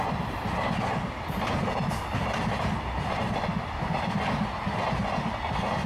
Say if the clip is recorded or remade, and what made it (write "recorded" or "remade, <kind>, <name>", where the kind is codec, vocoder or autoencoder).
recorded